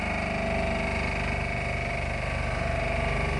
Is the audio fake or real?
real